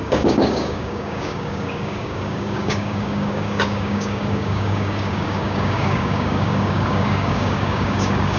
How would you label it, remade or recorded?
remade